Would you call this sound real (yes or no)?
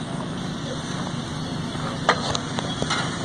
yes